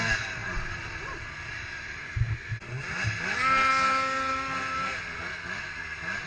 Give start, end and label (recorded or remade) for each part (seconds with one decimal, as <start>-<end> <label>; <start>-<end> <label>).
0.0-0.4 recorded; 0.4-1.3 remade; 1.3-6.3 recorded